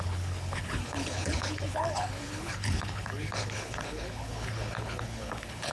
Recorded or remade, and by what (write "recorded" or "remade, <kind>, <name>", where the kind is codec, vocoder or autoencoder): remade, codec, HILCodec